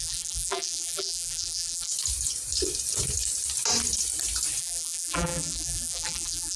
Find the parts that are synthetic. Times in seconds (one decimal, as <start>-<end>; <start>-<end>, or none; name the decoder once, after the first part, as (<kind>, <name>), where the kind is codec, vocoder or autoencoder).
0.0-1.9 (vocoder, BigVGAN v2); 4.6-6.6